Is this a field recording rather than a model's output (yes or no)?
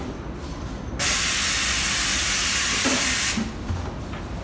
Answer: yes